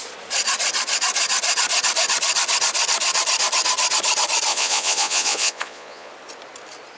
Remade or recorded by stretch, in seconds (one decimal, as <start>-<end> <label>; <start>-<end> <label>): 0.0-4.5 recorded; 4.5-6.1 remade; 6.1-7.0 recorded